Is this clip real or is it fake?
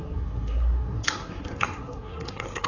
fake